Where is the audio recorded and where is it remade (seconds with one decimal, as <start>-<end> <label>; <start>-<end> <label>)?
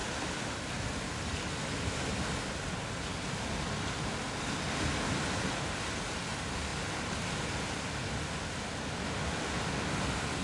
0.0-10.4 recorded